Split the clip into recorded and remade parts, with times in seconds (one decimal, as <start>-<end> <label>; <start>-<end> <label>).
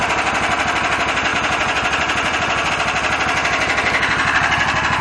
0.0-1.3 recorded; 1.3-2.7 remade; 2.7-5.0 recorded